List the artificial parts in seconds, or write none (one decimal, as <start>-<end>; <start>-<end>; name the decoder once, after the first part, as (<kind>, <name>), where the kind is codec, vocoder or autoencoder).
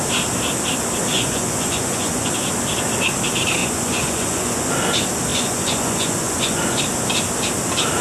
1.1-2.3 (vocoder, Vocos); 3.6-4.7; 5.3-6.8